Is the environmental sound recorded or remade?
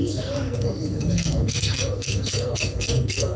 remade